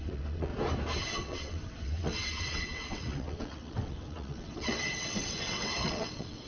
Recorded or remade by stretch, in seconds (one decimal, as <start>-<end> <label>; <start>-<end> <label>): 0.0-0.5 remade; 0.5-1.1 recorded; 1.1-6.5 remade